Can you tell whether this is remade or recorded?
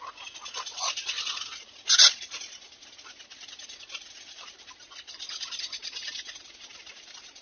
recorded